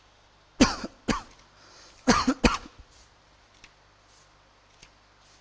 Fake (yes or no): no